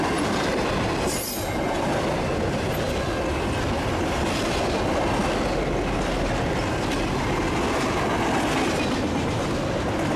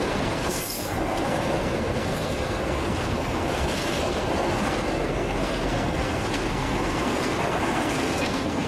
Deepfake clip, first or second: second